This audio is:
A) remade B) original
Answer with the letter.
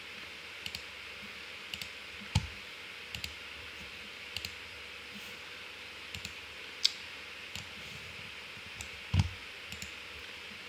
B